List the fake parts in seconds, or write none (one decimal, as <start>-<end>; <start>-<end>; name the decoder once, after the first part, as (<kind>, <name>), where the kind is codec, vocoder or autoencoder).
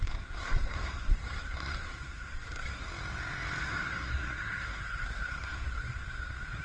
0.0-2.9 (codec, SNAC); 3.6-6.6